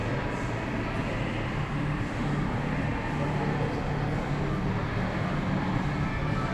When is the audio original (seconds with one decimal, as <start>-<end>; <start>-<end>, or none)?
0.0-6.5